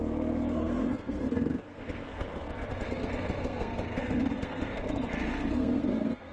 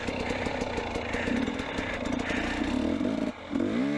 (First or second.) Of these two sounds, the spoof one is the first